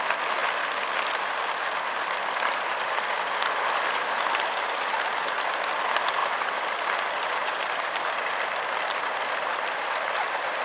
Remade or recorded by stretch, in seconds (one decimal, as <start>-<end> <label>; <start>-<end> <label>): 0.0-6.2 recorded; 6.2-6.8 remade; 6.8-7.4 recorded; 7.4-9.5 remade; 9.5-10.6 recorded